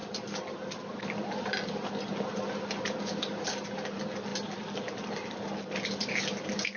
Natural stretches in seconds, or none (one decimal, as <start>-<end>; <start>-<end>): 0.0-6.8

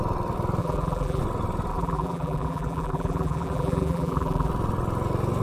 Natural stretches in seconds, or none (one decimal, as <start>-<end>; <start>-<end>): 0.0-0.6; 1.2-1.7; 4.5-5.4

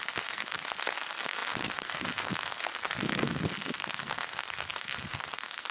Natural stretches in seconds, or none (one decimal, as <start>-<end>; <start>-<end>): none

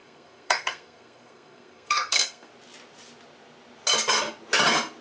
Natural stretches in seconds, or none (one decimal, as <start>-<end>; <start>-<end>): 2.5-5.0